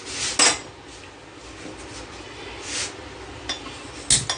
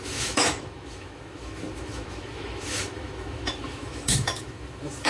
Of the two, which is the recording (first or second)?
first